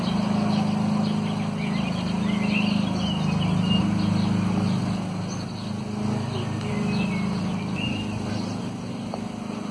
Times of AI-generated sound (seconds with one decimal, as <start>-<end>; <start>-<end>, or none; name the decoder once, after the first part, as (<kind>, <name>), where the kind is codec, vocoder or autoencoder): none

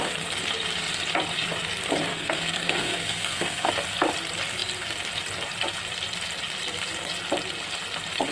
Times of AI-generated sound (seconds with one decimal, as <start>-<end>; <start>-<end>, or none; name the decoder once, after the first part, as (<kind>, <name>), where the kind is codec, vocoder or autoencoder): 2.1-3.7 (codec, SNAC)

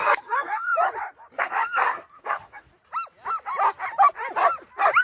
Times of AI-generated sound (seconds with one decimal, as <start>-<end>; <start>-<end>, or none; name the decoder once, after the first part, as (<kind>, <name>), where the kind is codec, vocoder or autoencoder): 0.0-0.7 (codec, SNAC); 1.4-2.7

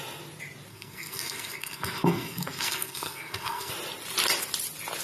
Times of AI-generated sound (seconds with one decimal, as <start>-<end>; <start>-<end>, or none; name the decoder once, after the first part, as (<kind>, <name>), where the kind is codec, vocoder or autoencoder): 0.7-3.7 (codec, SNAC)

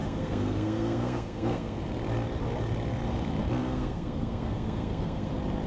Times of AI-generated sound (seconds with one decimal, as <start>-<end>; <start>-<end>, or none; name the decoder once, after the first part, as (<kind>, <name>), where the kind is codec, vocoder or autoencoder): 0.0-1.8 (codec, SNAC); 3.6-5.3

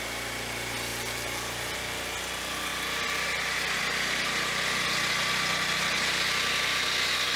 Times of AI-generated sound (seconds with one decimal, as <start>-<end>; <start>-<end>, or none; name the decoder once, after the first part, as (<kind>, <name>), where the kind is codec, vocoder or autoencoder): none

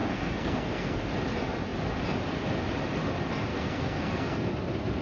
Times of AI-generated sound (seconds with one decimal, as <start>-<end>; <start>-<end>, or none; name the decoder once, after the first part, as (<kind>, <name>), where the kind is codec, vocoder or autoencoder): 0.0-1.0 (codec, SNAC); 3.5-4.5

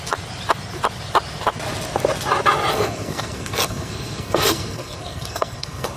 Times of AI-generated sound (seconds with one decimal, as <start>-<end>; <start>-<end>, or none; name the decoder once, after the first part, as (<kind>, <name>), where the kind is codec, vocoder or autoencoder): 2.7-6.0 (codec, SNAC)